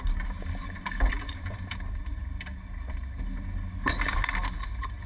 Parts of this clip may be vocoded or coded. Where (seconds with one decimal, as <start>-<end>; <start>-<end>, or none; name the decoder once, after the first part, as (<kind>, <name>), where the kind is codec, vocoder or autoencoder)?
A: 0.0-2.2 (vocoder, BigVGAN v2); 4.0-5.1